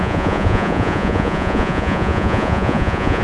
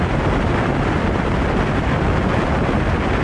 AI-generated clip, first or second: first